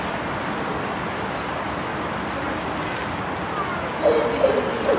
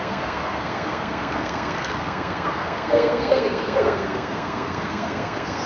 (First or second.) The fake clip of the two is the second